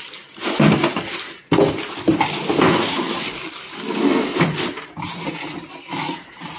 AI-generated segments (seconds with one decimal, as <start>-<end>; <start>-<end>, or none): none